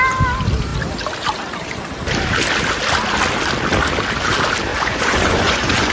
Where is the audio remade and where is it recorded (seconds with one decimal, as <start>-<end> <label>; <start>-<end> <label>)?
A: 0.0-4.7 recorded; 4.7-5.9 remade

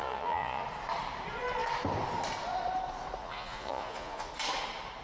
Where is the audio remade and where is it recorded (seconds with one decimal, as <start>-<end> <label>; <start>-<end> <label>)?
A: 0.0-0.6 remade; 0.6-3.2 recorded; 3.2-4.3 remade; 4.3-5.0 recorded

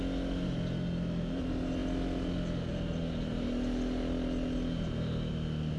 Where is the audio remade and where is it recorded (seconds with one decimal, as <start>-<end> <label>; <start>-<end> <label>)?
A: 0.0-5.8 recorded

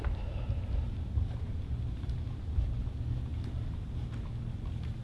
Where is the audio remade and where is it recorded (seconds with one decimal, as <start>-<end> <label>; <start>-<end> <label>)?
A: 0.0-5.0 recorded

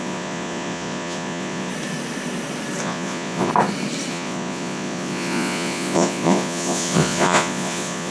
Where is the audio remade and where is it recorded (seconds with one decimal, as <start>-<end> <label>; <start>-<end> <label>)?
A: 0.0-1.7 remade; 1.7-2.8 recorded; 2.8-3.5 remade; 3.5-4.1 recorded; 4.1-8.1 remade

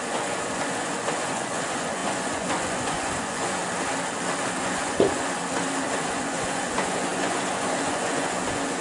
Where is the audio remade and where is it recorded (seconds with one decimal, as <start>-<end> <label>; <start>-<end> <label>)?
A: 0.0-3.6 remade; 3.6-4.6 recorded; 4.6-5.4 remade; 5.4-6.0 recorded; 6.0-8.8 remade

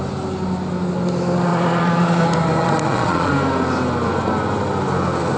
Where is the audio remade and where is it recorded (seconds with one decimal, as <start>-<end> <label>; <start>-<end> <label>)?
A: 0.0-1.5 recorded; 1.5-2.2 remade; 2.2-2.6 recorded; 2.6-3.3 remade; 3.3-5.4 recorded